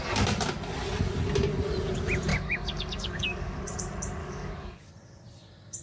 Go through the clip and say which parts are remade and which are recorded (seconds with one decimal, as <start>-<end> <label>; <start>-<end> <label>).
0.0-2.3 recorded; 2.3-3.6 remade; 3.6-4.2 recorded; 4.2-4.9 remade; 4.9-5.8 recorded